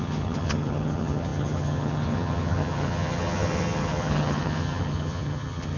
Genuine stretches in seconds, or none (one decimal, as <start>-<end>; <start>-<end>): none